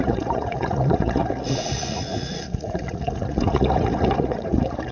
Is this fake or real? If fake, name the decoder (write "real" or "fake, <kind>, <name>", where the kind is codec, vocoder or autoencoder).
fake, vocoder, Vocos